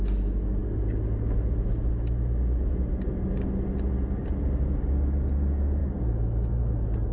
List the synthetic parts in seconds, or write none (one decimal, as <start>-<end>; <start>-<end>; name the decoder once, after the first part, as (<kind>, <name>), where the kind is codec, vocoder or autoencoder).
none